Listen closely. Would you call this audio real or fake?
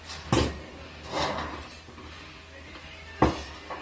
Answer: real